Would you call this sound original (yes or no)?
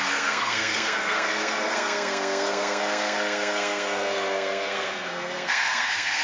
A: no